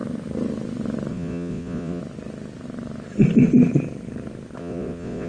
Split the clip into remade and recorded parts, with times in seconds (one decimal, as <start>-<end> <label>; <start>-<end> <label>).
0.0-1.1 recorded; 1.1-2.0 remade; 2.0-4.6 recorded; 4.6-5.3 remade